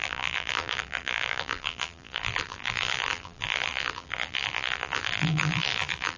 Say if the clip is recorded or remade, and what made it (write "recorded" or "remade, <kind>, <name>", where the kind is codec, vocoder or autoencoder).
remade, vocoder, BigVGAN v2